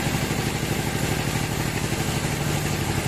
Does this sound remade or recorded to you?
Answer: recorded